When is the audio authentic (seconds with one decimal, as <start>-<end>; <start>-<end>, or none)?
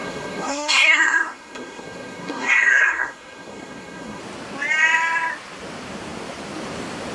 4.2-7.1